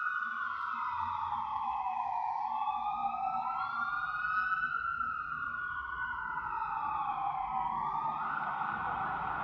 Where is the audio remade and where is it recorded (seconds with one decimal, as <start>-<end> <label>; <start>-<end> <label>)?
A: 0.0-1.5 recorded; 1.5-2.3 remade; 2.3-9.4 recorded